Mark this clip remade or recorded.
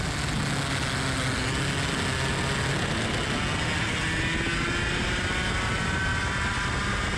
recorded